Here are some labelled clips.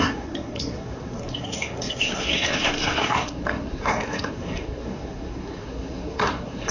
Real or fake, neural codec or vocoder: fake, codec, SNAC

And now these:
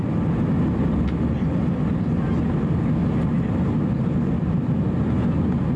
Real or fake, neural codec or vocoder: real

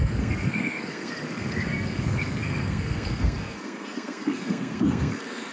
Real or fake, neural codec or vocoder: fake, codec, SNAC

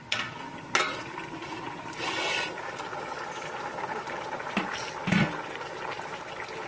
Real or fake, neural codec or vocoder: real